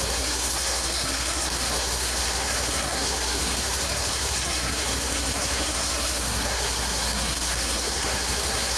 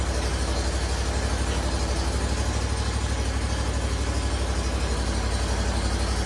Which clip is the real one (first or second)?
second